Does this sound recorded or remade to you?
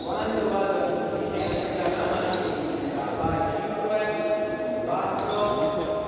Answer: recorded